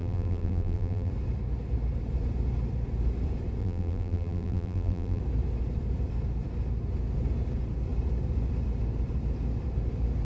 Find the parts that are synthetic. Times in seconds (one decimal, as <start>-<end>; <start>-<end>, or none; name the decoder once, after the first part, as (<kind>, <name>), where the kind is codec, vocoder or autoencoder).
0.0-1.1 (vocoder, BigVGAN v2); 3.6-5.2